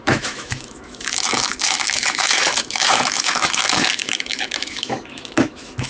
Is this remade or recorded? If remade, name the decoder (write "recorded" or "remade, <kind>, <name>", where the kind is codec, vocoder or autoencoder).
remade, autoencoder, DAC-VAE